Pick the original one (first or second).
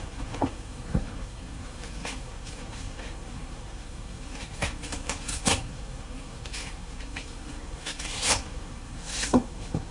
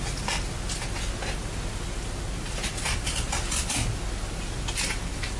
second